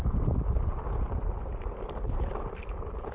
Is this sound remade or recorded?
recorded